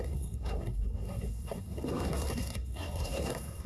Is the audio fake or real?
fake